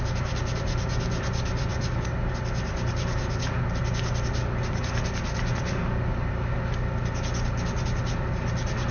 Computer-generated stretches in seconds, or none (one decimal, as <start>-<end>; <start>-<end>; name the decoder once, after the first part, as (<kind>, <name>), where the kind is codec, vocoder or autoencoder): none